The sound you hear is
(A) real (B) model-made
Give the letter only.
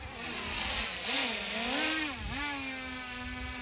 A